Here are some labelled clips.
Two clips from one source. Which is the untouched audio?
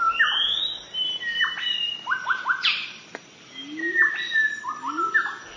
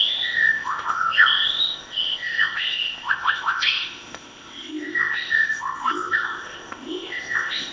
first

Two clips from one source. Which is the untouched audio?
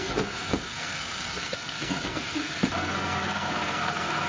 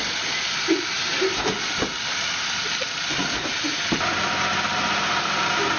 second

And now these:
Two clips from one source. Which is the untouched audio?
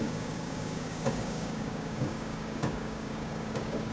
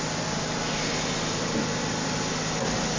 second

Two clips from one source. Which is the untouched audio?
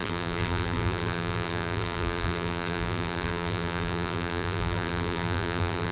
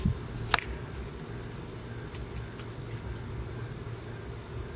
second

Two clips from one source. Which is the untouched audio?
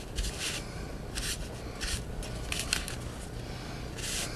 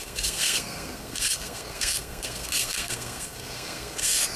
first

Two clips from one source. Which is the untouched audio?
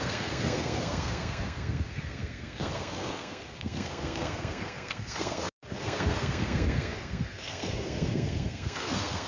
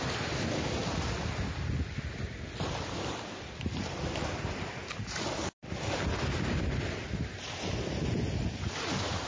second